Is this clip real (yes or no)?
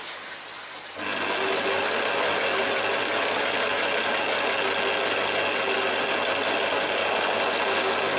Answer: yes